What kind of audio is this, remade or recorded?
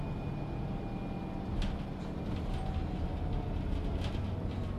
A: recorded